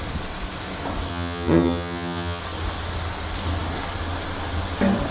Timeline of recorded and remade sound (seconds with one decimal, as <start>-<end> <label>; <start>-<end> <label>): 0.0-1.1 recorded; 1.1-2.4 remade; 2.4-5.1 recorded